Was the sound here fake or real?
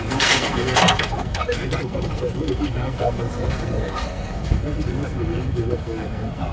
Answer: fake